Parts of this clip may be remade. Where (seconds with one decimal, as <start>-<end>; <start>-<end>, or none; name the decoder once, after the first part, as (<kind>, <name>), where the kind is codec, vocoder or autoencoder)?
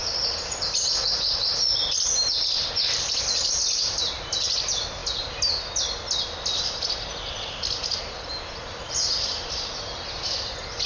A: none